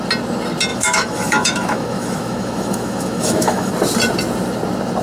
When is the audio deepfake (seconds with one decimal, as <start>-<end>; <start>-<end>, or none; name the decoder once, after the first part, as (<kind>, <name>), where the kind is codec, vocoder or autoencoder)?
0.7-3.7 (autoencoder, DAC-VAE)